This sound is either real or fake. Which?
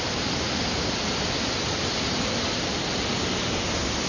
real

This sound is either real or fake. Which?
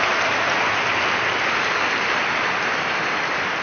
real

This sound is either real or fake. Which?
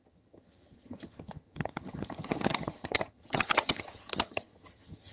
fake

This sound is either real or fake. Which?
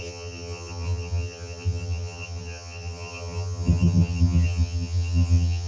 fake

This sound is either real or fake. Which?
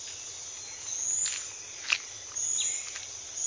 real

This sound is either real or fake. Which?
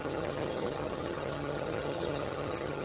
fake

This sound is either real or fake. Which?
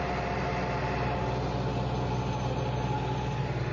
real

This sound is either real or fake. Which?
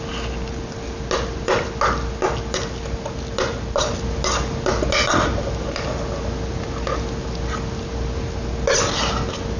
real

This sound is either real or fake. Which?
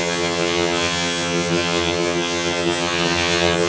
fake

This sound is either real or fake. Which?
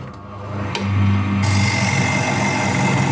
real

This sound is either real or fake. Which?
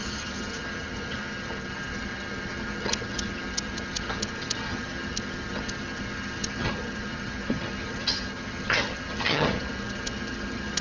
fake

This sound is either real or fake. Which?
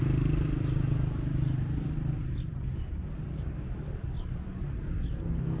real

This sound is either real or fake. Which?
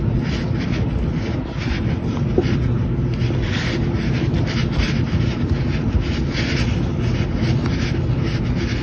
real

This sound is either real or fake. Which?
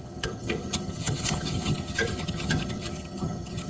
fake